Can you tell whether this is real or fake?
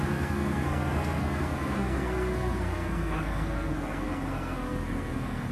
fake